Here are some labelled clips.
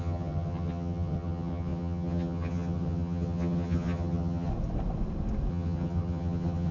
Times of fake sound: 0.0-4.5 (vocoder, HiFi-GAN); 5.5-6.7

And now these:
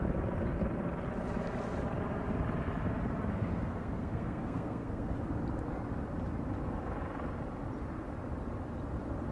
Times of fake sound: 3.3-5.1 (codec, SNAC)

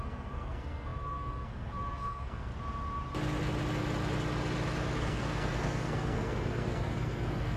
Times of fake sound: 0.0-2.5 (codec, SNAC); 5.0-7.6

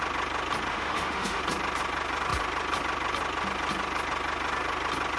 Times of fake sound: 0.7-1.4 (autoencoder, DAC-VAE)

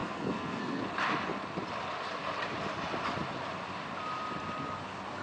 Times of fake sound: 0.0-0.8 (codec, SNAC)